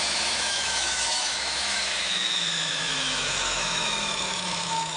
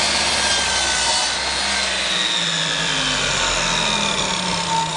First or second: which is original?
second